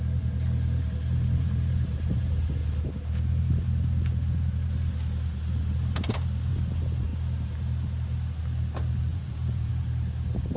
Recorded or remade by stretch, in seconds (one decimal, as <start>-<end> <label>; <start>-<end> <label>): 0.0-9.1 recorded; 9.1-9.7 remade; 9.7-10.6 recorded